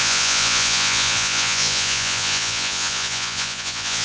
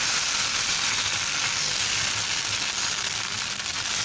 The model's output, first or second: first